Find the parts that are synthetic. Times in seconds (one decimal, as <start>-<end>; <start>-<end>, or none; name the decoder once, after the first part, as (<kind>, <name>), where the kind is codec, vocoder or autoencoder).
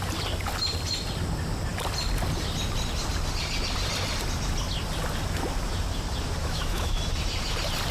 6.4-7.0 (autoencoder, DAC-VAE)